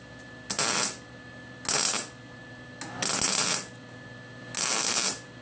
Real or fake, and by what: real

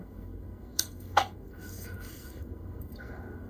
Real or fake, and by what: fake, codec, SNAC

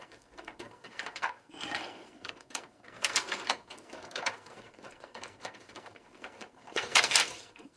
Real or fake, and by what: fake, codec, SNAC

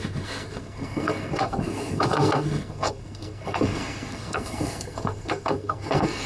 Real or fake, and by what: fake, codec, SNAC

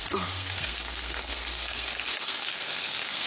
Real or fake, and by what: fake, codec, SNAC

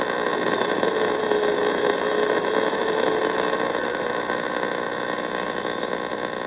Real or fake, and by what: real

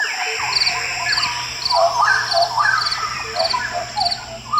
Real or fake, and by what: real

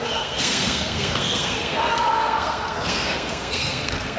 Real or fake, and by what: fake, codec, SNAC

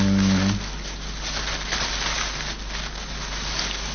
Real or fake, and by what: real